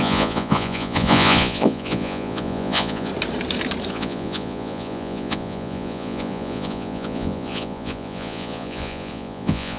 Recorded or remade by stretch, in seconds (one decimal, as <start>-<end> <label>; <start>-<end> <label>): 0.0-3.1 remade; 3.1-3.9 recorded; 3.9-9.8 remade